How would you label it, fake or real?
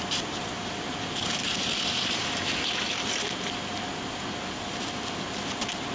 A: real